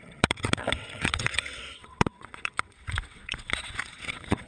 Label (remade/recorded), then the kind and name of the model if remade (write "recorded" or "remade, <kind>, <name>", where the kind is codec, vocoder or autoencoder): remade, vocoder, WaveNeXt